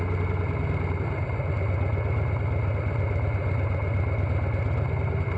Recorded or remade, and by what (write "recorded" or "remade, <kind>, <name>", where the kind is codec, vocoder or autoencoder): recorded